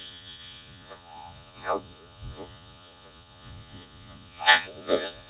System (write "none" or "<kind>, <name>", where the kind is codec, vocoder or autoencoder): vocoder, Vocos